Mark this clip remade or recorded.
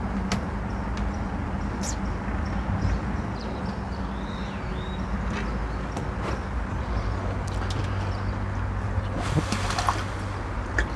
recorded